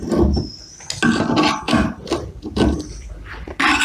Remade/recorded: recorded